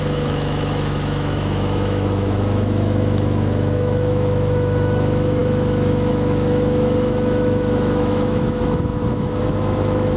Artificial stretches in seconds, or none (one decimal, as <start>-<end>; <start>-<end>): 0.0-10.2

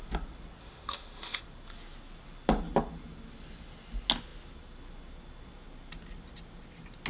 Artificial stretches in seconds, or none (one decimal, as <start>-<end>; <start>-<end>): 0.6-1.4

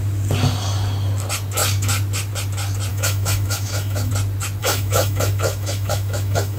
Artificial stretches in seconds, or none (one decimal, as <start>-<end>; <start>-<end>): 2.9-4.1; 4.6-6.6

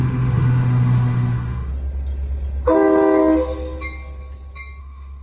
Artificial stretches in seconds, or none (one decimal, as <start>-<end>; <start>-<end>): 0.0-1.7; 4.8-5.2

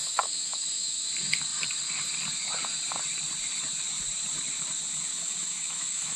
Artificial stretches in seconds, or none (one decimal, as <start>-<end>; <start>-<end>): 0.0-1.1; 5.1-6.2